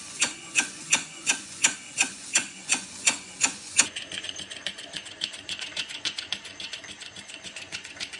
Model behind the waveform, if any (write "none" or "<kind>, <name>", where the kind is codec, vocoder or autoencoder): vocoder, Vocos